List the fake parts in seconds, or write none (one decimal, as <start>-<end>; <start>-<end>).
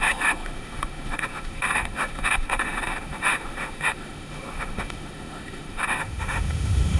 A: 0.0-7.0